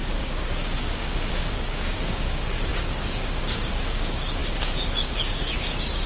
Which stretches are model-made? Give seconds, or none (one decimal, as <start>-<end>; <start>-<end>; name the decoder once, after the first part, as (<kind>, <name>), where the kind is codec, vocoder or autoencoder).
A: 0.0-6.1 (codec, DAC)